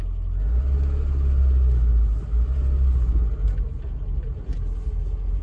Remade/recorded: recorded